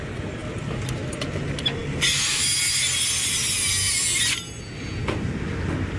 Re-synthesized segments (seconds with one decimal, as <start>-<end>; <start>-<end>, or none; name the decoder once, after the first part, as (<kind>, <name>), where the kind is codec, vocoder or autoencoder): none